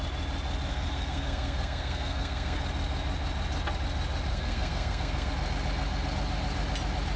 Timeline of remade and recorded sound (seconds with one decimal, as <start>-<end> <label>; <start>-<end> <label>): 0.0-0.7 recorded; 0.7-2.6 remade; 2.6-4.3 recorded; 4.3-5.3 remade; 5.3-7.2 recorded